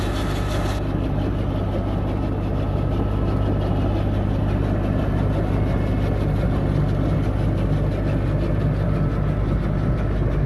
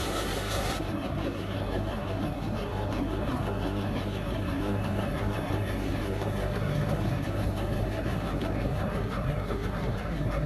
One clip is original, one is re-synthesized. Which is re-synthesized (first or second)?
second